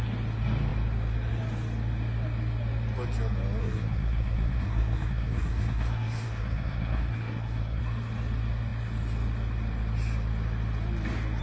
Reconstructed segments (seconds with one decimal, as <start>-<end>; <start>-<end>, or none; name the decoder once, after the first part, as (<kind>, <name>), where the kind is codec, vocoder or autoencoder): 3.6-7.8 (codec, SNAC)